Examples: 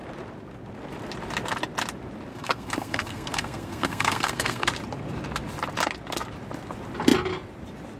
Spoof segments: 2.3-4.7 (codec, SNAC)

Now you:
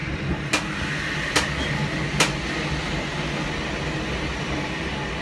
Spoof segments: 4.3-5.2 (vocoder, BigVGAN v2)